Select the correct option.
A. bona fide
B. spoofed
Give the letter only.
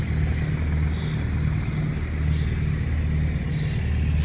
A